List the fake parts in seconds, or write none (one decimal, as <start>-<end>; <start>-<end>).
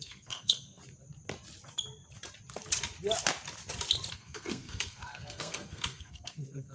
0.0-0.8; 4.1-6.7